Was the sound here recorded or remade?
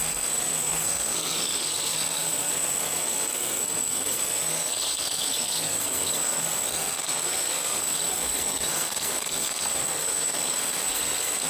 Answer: remade